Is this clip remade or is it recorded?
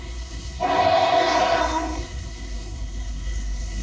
remade